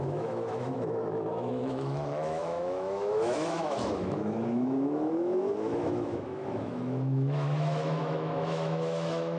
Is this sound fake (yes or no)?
yes